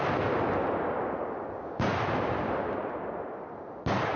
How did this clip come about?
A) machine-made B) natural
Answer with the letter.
B